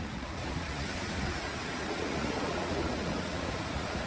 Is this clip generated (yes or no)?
yes